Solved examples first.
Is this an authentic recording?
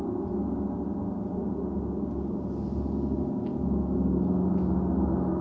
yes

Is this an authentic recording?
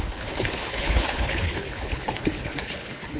no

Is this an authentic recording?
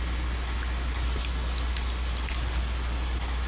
yes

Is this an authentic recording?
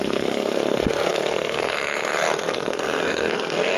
no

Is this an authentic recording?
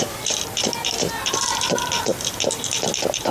yes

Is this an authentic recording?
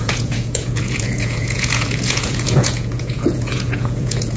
no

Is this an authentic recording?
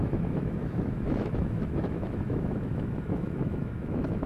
no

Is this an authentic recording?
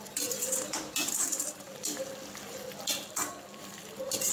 no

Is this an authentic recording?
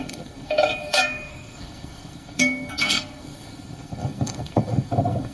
no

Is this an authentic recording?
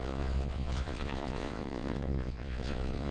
no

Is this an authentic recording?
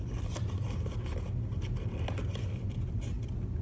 yes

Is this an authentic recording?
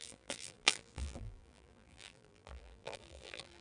no